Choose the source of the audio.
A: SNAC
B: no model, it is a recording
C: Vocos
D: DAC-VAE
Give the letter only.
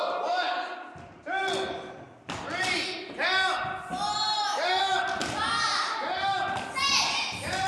B